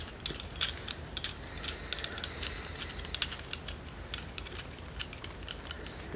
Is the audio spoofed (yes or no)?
no